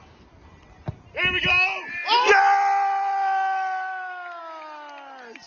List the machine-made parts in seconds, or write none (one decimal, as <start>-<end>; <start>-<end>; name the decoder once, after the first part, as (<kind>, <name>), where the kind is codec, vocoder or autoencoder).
none